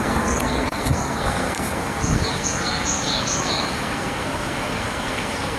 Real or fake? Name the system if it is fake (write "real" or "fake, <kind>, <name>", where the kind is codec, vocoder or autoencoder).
fake, codec, SNAC